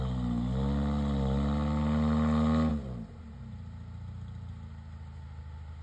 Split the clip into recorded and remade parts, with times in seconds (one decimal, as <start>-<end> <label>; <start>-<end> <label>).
0.0-2.7 recorded; 2.7-3.2 remade; 3.2-5.8 recorded